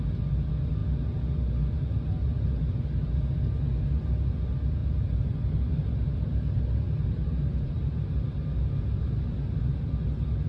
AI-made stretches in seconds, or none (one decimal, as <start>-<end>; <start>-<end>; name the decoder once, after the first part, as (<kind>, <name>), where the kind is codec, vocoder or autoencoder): 4.8-8.1 (vocoder, BigVGAN v2)